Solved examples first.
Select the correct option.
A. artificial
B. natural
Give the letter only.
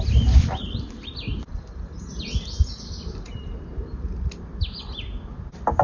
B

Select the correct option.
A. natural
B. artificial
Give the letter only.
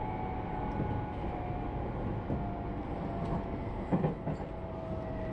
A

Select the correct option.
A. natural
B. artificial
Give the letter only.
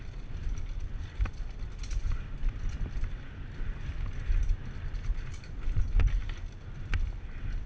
A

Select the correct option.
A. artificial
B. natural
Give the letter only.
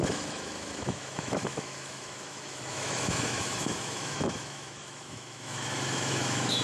A